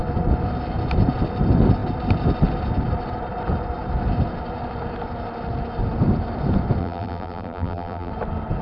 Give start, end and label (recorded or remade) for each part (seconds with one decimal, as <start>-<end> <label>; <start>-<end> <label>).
0.0-6.8 recorded; 6.8-8.1 remade; 8.1-8.6 recorded